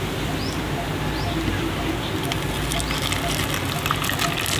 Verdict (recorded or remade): recorded